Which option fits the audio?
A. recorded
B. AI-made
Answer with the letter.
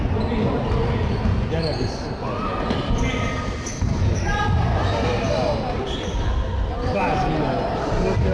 A